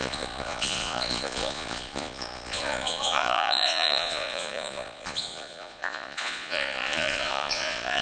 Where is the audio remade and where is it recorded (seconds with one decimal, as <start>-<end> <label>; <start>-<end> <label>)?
0.0-8.0 remade